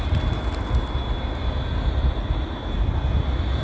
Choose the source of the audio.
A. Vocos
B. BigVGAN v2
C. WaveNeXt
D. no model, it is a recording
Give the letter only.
D